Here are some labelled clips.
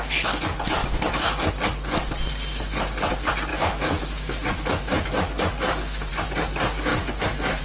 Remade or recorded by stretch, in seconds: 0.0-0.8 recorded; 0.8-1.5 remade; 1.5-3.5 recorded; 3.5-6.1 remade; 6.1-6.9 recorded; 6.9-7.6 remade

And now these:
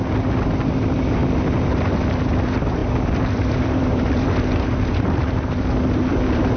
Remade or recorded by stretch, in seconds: 0.0-2.8 recorded; 2.8-5.8 remade; 5.8-6.6 recorded

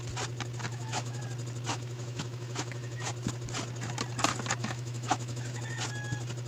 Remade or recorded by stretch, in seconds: 0.0-0.7 recorded; 0.7-1.2 remade; 1.2-1.7 recorded; 1.7-3.1 remade; 3.1-4.6 recorded; 4.6-5.6 remade; 5.6-6.5 recorded

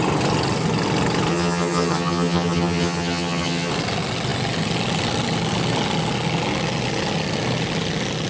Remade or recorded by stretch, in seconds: 0.0-1.3 recorded; 1.3-3.7 remade; 3.7-8.3 recorded

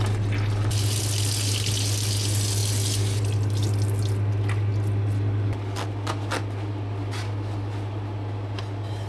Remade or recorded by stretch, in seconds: 0.0-9.1 recorded

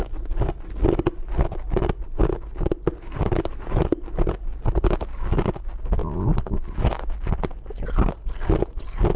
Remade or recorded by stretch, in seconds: 0.0-6.0 recorded; 6.0-6.5 remade; 6.5-9.2 recorded

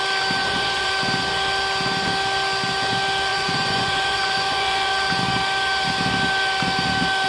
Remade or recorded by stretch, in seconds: 0.0-0.4 recorded; 0.4-0.9 remade; 0.9-3.3 recorded; 3.3-4.9 remade; 4.9-7.3 recorded

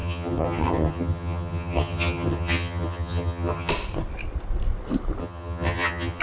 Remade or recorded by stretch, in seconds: 0.0-3.7 remade; 3.7-5.2 recorded; 5.2-6.2 remade